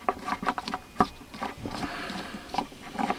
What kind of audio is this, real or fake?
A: real